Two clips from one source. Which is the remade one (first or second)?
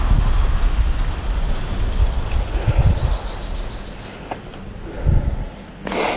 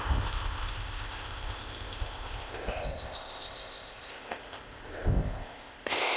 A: second